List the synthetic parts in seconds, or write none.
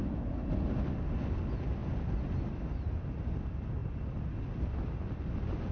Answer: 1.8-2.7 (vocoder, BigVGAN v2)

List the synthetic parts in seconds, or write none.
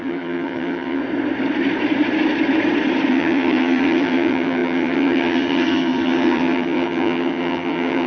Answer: 0.0-1.0 (vocoder, HiFi-GAN); 3.1-8.1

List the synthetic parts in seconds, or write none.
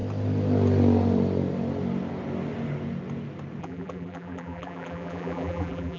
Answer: 3.6-6.0 (vocoder, BigVGAN v2)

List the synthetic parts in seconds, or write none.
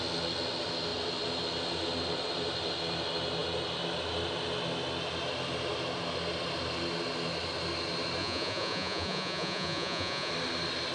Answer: 8.2-10.3 (vocoder, Vocos)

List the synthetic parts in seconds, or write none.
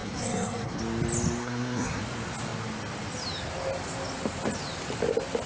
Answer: 0.0-0.8 (codec, SNAC); 1.4-2.0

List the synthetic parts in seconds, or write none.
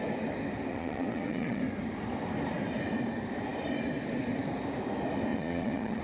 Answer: 0.7-1.6 (vocoder, Vocos); 5.3-6.0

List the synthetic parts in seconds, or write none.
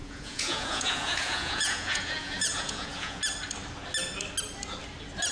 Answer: 0.0-3.2 (vocoder, Vocos)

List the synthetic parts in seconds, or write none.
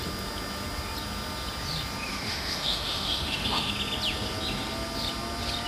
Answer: 2.1-3.7 (autoencoder, DAC-VAE)